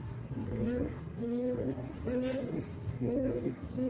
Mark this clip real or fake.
fake